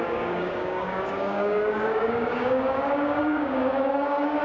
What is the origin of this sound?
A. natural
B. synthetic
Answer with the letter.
B